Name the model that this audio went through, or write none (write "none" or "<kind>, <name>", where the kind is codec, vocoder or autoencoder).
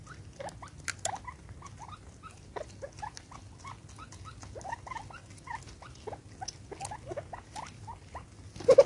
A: none